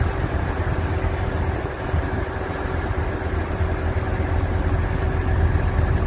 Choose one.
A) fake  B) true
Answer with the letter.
B